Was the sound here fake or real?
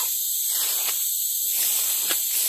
real